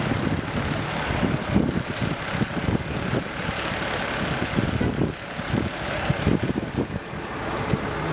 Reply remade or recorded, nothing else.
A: recorded